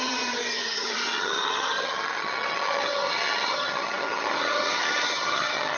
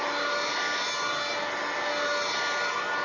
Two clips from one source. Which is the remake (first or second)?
first